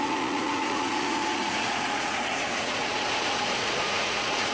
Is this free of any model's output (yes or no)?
no